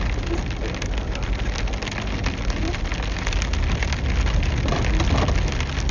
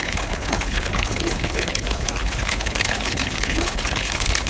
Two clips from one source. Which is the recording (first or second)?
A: first